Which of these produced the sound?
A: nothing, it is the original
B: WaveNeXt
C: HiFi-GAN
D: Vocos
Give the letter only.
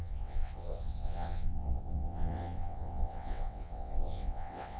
B